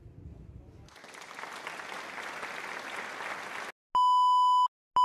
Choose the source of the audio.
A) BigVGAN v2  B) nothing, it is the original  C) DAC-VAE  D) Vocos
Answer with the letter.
B